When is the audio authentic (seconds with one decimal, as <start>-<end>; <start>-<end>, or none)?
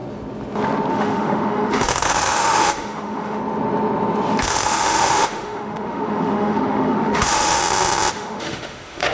0.0-0.9; 3.4-4.4; 7.6-8.1